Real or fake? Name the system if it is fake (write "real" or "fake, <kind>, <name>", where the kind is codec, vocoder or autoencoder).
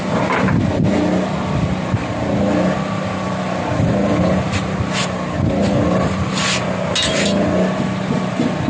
real